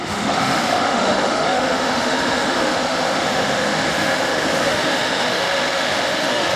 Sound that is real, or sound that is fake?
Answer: fake